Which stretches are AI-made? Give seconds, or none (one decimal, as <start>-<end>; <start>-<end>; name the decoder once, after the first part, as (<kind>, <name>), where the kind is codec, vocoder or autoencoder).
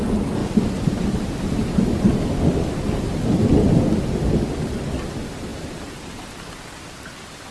0.4-3.6 (vocoder, BigVGAN v2); 5.5-7.5